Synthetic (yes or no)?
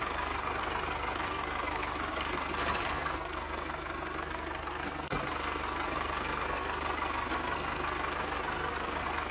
yes